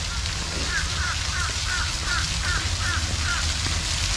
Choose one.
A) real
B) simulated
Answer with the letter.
A